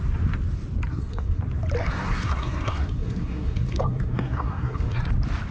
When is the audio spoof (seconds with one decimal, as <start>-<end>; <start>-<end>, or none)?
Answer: 0.9-1.4; 1.8-5.1